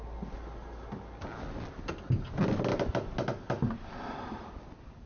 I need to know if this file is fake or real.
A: real